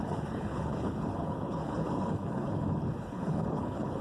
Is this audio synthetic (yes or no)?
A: yes